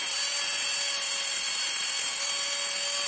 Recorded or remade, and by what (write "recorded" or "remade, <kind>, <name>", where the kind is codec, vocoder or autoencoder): recorded